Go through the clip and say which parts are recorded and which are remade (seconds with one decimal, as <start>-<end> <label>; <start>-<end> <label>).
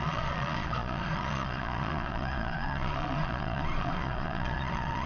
0.0-5.1 remade